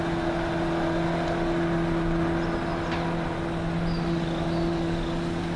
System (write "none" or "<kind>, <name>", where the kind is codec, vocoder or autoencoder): none